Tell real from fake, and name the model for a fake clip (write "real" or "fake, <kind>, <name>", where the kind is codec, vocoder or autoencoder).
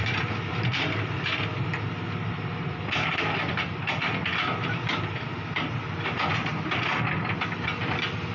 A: real